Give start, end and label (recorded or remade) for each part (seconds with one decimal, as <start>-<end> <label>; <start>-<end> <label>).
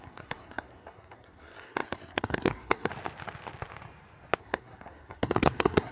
0.0-2.9 remade; 2.9-4.4 recorded; 4.4-5.9 remade